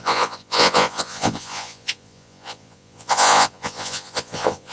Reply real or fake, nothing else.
fake